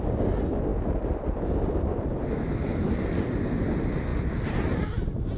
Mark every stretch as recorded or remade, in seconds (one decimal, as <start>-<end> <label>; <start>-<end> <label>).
0.0-4.1 recorded; 4.1-4.6 remade; 4.6-5.4 recorded